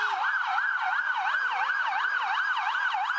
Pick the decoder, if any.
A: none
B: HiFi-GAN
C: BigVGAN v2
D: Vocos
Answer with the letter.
A